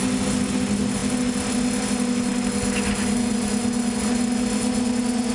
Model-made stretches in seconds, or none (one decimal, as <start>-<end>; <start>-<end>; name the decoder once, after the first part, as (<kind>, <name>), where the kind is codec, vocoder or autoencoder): none